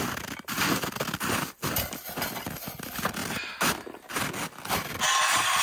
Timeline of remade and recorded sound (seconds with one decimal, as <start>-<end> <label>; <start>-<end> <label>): 0.0-5.6 recorded